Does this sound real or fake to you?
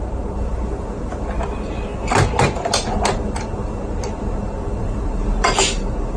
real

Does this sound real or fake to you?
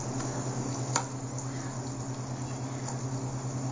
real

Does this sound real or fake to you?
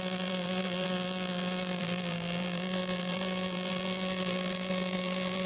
fake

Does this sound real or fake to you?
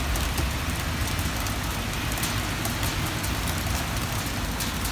real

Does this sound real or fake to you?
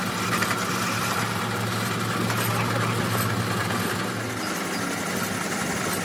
real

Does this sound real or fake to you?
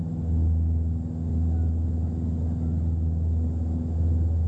real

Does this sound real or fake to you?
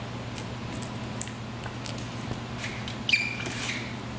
real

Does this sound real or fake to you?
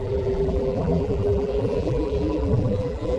fake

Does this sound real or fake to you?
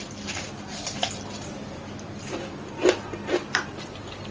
real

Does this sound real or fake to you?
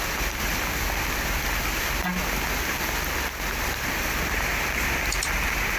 real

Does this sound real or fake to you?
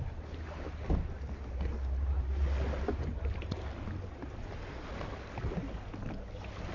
real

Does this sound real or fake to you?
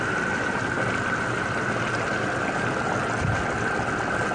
real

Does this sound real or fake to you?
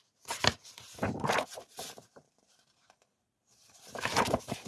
fake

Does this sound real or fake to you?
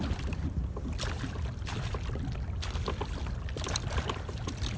fake